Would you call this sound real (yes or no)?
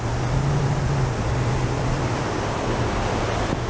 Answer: yes